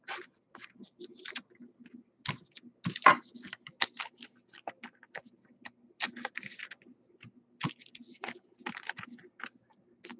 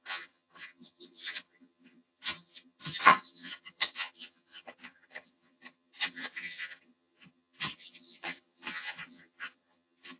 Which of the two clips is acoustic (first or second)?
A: first